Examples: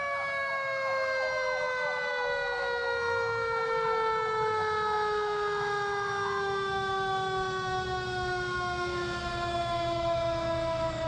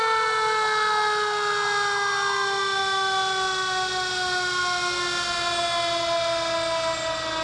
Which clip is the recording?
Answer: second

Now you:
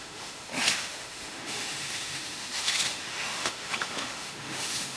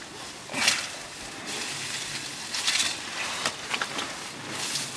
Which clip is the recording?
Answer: second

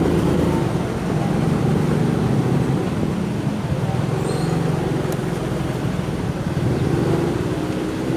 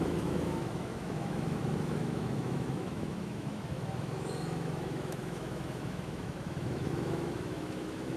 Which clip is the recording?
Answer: first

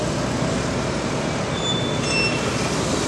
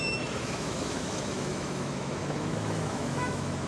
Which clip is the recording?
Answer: first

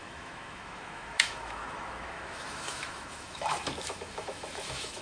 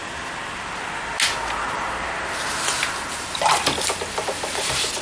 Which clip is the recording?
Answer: second